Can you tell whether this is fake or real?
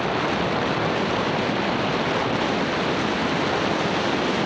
real